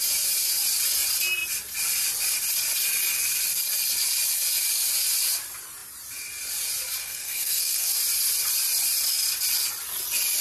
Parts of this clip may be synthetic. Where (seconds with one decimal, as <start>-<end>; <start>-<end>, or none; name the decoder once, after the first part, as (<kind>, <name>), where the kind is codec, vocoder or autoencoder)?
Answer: 7.0-7.9 (codec, SNAC)